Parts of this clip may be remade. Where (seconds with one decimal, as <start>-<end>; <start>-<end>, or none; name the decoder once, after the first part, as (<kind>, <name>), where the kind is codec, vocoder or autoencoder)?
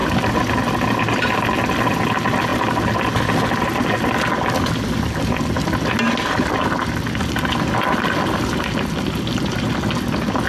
none